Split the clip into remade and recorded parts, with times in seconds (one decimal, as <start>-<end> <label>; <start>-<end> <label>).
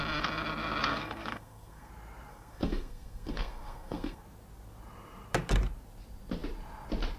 0.0-0.9 recorded; 0.9-1.9 remade; 1.9-2.3 recorded; 2.3-4.2 remade; 4.2-7.2 recorded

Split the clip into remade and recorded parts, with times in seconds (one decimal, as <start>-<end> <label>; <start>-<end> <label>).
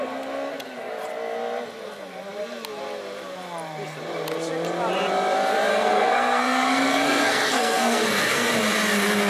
0.0-5.7 recorded; 5.7-8.5 remade; 8.5-9.3 recorded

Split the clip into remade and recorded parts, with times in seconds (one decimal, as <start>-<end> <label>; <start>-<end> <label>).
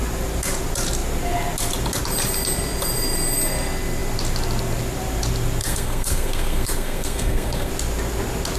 0.0-5.6 recorded; 5.6-7.7 remade; 7.7-8.6 recorded